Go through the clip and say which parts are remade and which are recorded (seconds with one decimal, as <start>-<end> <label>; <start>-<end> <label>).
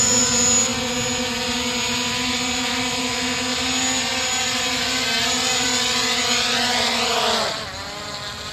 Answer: 0.0-3.5 recorded; 3.5-5.7 remade; 5.7-8.5 recorded